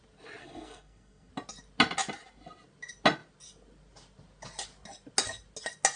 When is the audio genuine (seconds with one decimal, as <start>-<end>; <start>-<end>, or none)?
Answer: 0.0-0.4; 1.3-6.0